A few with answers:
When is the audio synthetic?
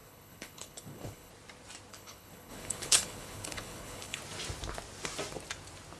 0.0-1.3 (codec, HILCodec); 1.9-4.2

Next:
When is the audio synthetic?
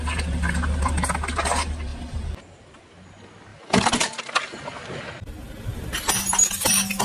1.9-2.8 (vocoder, BigVGAN v2); 3.5-5.0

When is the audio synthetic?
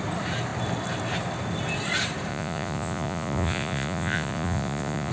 2.3-5.1 (vocoder, Vocos)